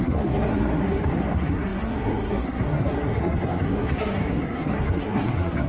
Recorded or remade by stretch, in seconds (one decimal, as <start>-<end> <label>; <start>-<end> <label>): 0.0-5.7 remade